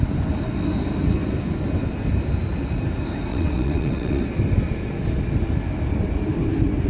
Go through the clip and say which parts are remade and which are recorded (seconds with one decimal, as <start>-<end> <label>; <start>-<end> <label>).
0.0-3.3 recorded; 3.3-4.2 remade; 4.2-6.9 recorded